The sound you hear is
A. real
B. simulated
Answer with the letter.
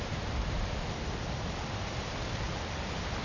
A